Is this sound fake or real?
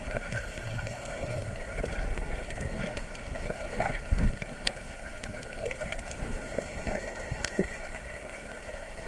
fake